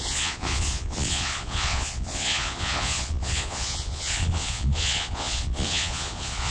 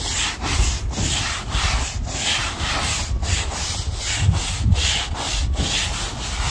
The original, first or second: second